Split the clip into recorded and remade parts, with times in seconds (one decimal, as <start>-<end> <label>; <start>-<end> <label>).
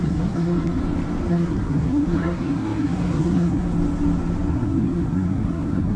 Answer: 0.0-0.8 remade; 0.8-1.3 recorded; 1.3-3.7 remade; 3.7-4.5 recorded; 4.5-6.0 remade